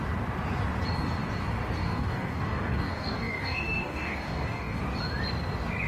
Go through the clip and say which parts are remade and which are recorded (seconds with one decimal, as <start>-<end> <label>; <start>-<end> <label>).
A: 0.0-1.8 recorded; 1.8-4.8 remade; 4.8-5.9 recorded